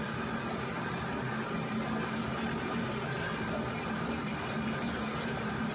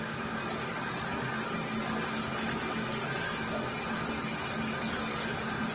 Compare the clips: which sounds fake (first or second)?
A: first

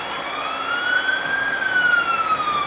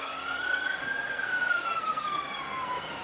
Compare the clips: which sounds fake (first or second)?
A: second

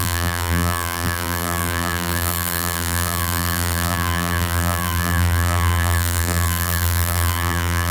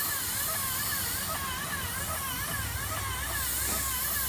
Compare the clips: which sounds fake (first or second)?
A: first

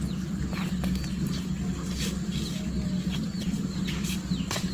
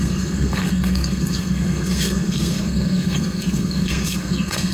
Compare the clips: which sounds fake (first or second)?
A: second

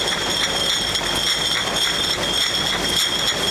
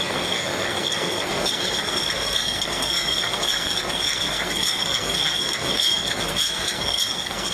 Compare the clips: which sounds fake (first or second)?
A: second